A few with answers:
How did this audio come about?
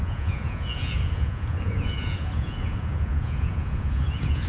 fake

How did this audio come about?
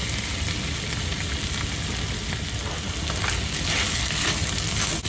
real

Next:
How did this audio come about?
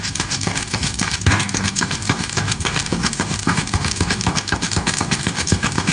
fake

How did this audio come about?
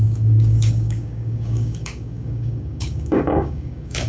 fake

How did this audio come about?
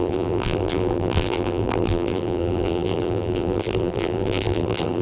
fake